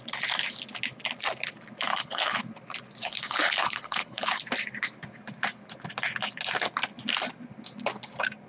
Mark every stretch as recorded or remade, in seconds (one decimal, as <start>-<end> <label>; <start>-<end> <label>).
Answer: 0.0-1.9 recorded; 1.9-2.4 remade; 2.4-3.0 recorded; 3.0-4.4 remade; 4.4-8.5 recorded